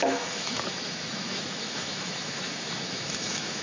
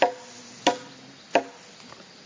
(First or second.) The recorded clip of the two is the second